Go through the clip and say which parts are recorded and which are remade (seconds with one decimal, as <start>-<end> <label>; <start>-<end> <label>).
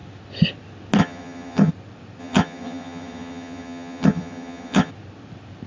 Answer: 0.0-1.0 recorded; 1.0-1.7 remade; 1.7-2.2 recorded; 2.2-4.9 remade; 4.9-5.7 recorded